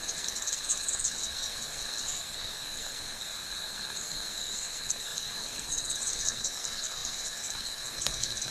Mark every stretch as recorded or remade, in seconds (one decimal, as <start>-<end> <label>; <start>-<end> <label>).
0.0-8.5 remade